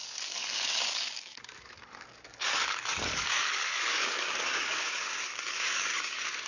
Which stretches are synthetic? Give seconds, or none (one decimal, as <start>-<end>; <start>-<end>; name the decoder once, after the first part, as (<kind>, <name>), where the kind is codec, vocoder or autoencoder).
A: 0.0-6.5 (codec, DAC)